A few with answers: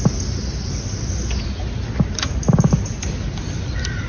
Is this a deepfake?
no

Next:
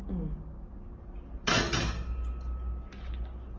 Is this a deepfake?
no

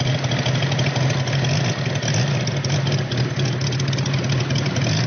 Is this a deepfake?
no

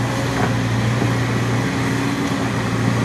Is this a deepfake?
no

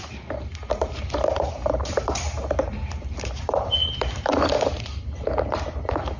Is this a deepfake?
yes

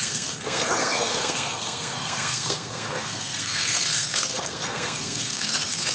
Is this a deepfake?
yes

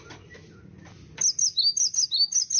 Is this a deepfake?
no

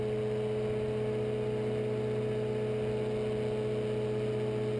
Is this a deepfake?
no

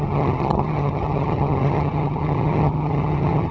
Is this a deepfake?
yes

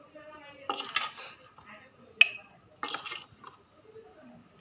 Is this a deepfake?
no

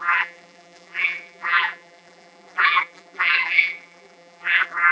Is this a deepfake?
yes